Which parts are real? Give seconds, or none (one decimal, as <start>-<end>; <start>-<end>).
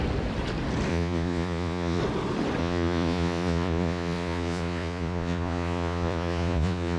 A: 0.0-0.9; 2.0-2.6